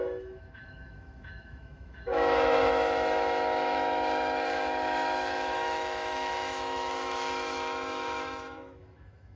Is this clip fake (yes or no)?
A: yes